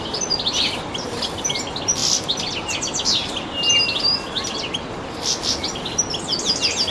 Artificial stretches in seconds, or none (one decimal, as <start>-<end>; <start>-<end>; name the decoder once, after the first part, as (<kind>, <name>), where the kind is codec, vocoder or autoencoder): none